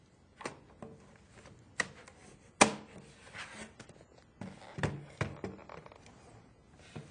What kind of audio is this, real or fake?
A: real